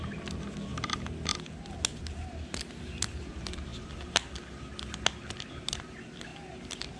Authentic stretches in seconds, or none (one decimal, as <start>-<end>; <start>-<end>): 0.0-7.0